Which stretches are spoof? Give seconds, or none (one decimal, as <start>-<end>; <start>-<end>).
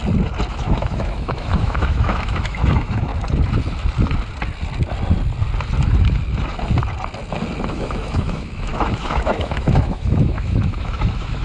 0.5-3.1; 7.7-11.4